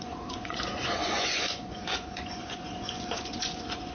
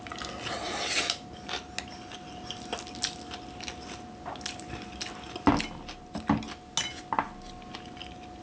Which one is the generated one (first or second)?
first